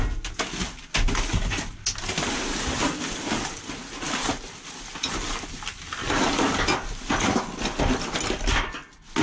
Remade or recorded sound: recorded